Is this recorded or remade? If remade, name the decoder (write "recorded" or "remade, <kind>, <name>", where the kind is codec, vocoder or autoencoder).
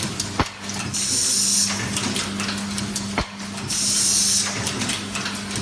recorded